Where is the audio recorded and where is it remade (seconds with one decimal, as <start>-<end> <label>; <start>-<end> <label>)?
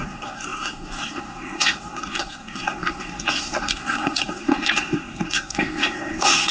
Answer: 0.0-6.5 remade